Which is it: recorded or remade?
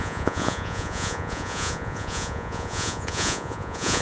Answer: remade